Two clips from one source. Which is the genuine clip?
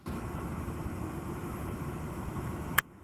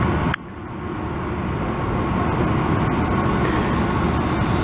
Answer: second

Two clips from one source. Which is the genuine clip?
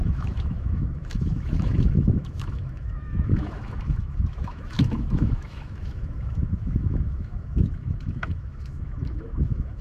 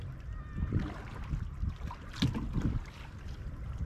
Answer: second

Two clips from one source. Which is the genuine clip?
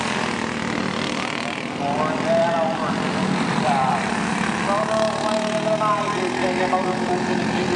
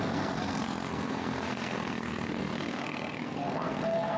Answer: first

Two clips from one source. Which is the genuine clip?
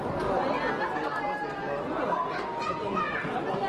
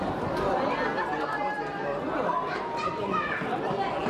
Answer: first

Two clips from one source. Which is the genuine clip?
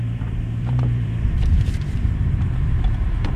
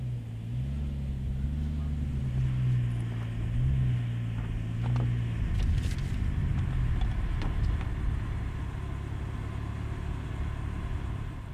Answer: second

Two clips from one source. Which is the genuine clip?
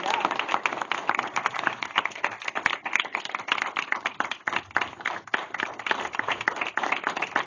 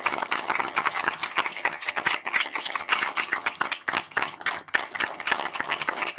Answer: first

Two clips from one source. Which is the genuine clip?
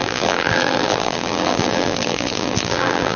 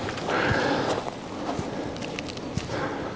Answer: second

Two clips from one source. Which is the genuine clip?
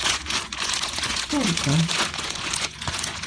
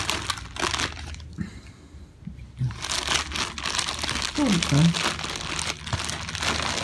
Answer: second